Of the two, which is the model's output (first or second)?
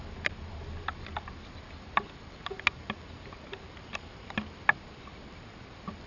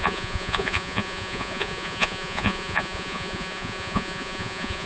second